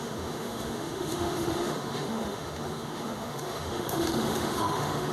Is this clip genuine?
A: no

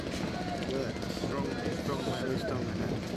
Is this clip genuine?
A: yes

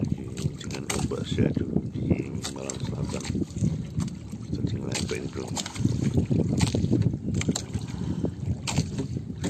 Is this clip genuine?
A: no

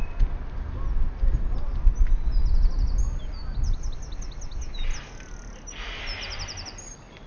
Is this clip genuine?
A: yes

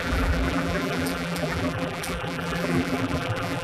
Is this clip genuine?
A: no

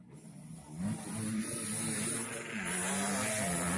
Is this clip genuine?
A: yes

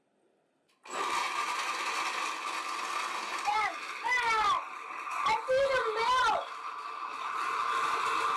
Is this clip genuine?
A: yes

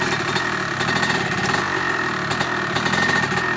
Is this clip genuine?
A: yes